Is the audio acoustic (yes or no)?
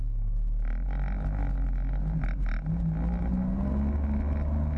yes